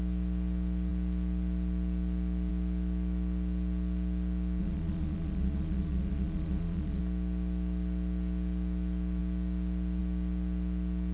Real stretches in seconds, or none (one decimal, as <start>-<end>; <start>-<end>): 0.0-4.6; 7.0-11.1